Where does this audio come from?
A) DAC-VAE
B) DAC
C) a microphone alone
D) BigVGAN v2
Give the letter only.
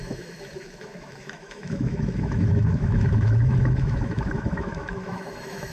A